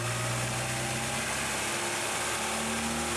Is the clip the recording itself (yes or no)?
yes